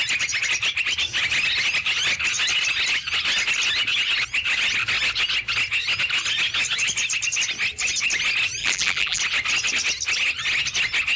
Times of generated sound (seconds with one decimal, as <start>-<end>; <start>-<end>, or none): 8.6-9.2